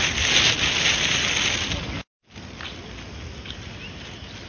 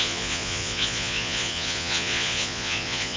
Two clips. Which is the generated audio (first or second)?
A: second